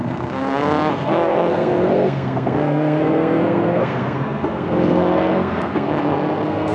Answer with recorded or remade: remade